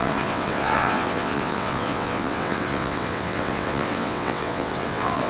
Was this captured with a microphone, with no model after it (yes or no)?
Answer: no